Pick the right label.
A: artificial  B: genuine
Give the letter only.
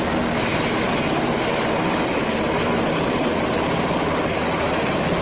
B